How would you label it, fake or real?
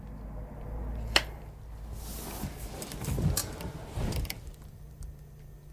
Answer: real